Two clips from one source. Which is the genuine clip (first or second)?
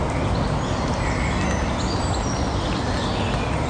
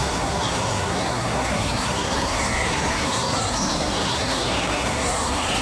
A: first